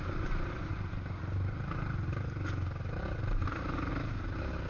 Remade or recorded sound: recorded